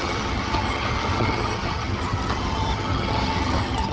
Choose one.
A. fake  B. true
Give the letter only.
A